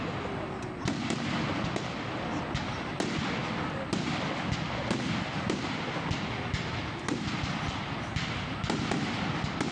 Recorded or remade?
recorded